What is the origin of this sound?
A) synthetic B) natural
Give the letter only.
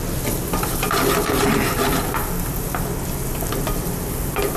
B